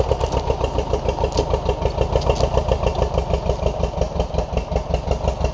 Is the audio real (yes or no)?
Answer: yes